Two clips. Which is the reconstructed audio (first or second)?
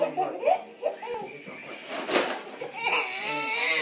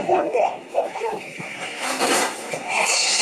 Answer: second